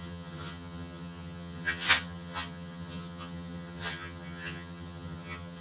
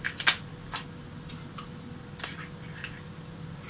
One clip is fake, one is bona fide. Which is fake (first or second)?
first